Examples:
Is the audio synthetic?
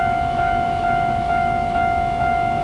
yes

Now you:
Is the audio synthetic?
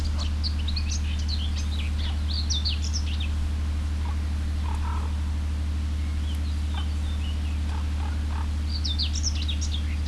no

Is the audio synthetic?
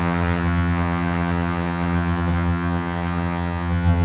yes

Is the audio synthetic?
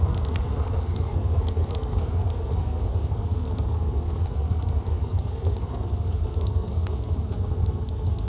yes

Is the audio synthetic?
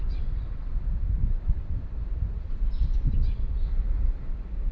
yes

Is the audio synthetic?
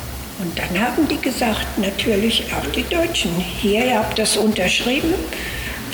no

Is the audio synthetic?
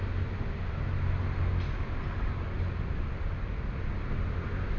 no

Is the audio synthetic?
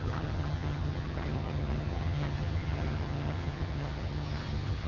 yes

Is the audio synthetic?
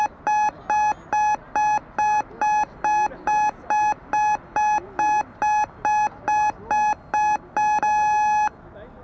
no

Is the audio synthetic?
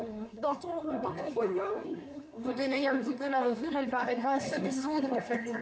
yes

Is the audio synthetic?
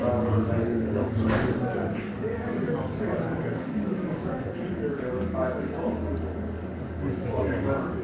yes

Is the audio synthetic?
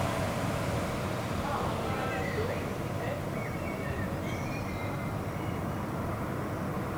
no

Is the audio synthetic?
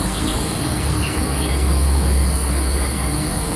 yes